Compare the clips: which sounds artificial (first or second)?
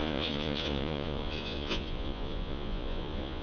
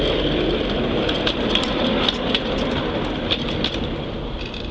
first